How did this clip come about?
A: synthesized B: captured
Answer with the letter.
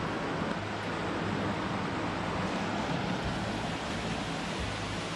B